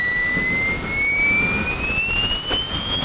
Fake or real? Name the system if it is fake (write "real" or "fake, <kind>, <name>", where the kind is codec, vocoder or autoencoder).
real